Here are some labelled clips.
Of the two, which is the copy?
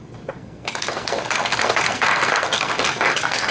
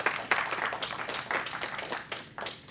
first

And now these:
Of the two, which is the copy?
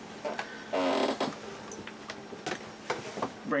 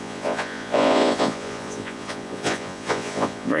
second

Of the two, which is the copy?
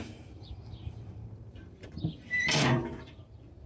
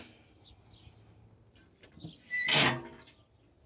first